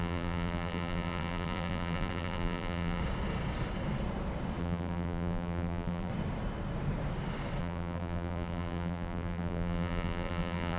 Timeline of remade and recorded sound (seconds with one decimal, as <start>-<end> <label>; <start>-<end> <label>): 0.0-3.0 remade; 3.0-4.6 recorded; 4.6-6.1 remade; 6.1-7.6 recorded; 7.6-10.8 remade